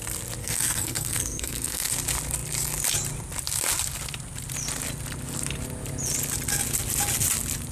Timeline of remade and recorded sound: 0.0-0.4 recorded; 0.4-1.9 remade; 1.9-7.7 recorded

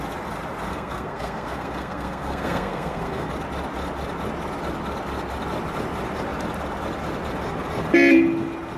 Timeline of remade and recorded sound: 0.0-0.7 recorded; 0.7-3.3 remade; 3.3-8.8 recorded

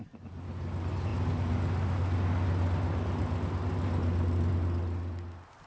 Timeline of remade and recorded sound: 0.0-5.7 recorded

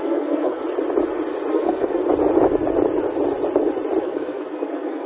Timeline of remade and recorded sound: 0.0-0.6 remade; 0.6-1.5 recorded; 1.5-2.0 remade; 2.0-4.0 recorded; 4.0-5.1 remade

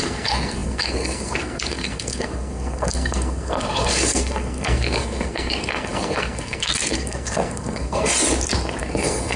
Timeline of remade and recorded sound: 0.0-8.1 remade; 8.1-8.8 recorded; 8.8-9.4 remade